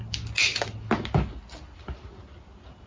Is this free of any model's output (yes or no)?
yes